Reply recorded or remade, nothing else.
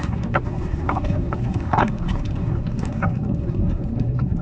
remade